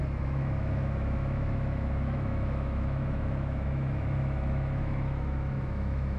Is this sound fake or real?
fake